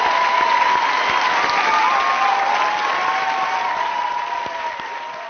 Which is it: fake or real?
real